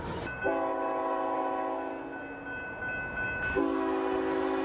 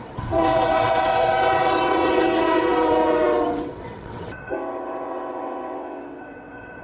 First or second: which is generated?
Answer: second